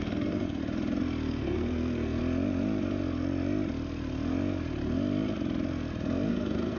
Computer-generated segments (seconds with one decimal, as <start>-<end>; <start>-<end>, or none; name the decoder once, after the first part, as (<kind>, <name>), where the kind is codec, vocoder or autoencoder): 0.0-0.6 (codec, SNAC); 1.3-2.2; 6.3-6.8